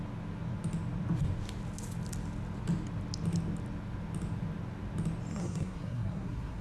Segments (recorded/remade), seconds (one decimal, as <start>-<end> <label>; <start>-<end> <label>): 0.0-5.4 recorded; 5.4-6.6 remade

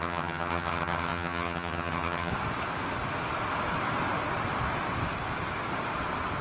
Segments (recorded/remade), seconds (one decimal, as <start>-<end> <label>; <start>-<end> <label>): 0.0-2.3 remade; 2.3-6.4 recorded

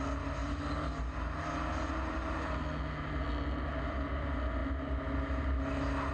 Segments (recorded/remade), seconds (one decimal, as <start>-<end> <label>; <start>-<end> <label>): 0.0-6.1 recorded

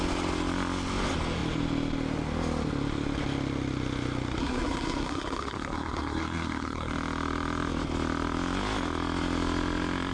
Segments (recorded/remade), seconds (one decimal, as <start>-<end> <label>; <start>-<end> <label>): 0.0-4.4 recorded; 4.4-6.9 remade; 6.9-10.1 recorded

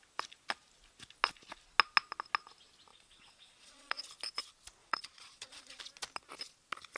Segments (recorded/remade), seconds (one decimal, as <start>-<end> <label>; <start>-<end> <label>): 0.0-2.9 recorded; 2.9-4.0 remade; 4.0-4.8 recorded; 4.8-5.8 remade; 5.8-7.0 recorded

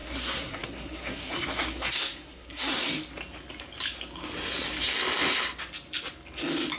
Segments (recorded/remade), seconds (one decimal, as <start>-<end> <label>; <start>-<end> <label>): 0.0-2.8 remade; 2.8-6.8 recorded